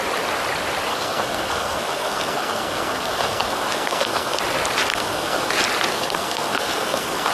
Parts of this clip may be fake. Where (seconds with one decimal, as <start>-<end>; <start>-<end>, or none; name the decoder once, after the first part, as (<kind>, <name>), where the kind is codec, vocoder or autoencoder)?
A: 0.9-4.4 (codec, SNAC); 4.9-5.5; 5.9-7.3